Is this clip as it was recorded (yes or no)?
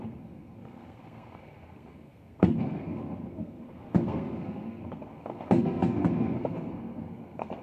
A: no